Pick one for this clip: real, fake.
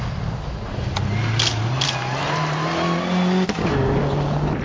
real